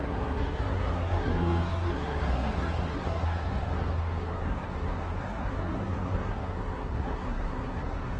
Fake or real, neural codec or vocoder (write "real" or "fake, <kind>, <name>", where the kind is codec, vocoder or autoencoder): fake, codec, SNAC